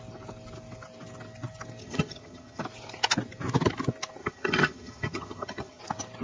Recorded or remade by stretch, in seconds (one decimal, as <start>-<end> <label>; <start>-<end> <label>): 0.0-1.8 recorded; 1.8-2.6 remade; 2.6-4.2 recorded; 4.2-5.8 remade; 5.8-6.2 recorded